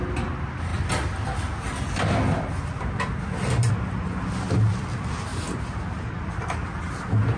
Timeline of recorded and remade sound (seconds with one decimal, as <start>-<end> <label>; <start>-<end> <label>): 0.0-7.4 recorded